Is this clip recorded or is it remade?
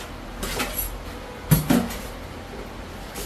recorded